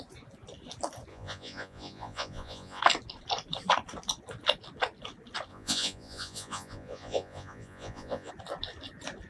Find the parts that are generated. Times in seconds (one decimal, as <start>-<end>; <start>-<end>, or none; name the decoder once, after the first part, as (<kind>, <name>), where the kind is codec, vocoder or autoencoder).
1.1-2.8 (vocoder, Vocos); 5.5-8.3